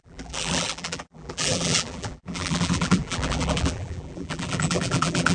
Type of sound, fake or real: fake